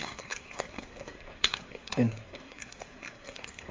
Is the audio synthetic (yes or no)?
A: yes